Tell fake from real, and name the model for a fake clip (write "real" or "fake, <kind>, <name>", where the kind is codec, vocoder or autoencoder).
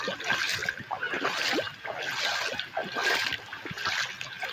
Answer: real